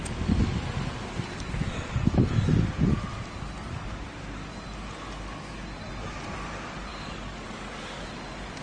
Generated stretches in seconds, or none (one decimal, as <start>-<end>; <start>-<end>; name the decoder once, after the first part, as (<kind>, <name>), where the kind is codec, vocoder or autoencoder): 6.9-8.1 (codec, DAC)